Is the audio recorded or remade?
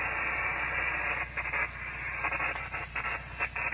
recorded